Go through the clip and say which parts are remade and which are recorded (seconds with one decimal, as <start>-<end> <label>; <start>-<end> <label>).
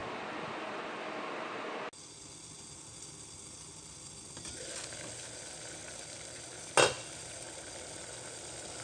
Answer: 0.0-8.8 recorded